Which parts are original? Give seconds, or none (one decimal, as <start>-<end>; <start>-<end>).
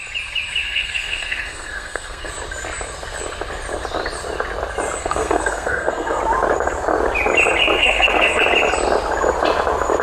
0.0-0.6; 2.3-5.0; 6.2-7.6; 8.4-10.0